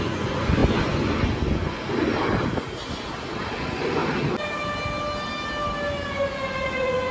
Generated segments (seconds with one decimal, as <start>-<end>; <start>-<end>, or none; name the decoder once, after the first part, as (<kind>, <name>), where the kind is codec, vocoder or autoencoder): 0.0-1.8 (vocoder, Vocos); 3.5-4.0; 6.1-7.1